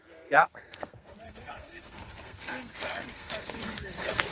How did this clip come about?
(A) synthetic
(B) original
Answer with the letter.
A